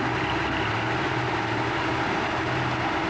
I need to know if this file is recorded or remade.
recorded